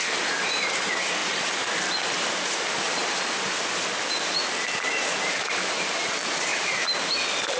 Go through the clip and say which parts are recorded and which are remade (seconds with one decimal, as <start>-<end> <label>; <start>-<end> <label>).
0.0-7.6 recorded